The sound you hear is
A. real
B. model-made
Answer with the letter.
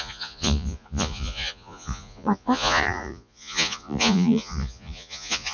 B